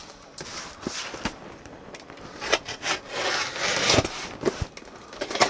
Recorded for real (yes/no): yes